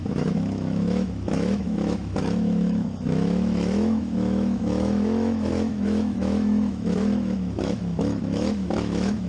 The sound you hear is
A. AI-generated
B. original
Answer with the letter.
A